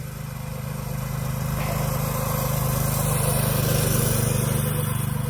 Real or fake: real